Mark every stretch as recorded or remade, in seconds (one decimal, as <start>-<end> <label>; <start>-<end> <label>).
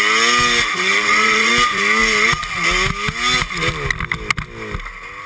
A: 0.0-0.7 recorded; 0.7-1.5 remade; 1.5-5.3 recorded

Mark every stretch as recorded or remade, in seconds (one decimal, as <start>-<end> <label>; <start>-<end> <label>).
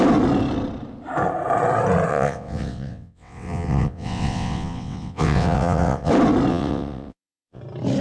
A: 0.0-2.1 recorded; 2.1-6.1 remade; 6.1-6.5 recorded; 6.5-7.6 remade; 7.6-8.0 recorded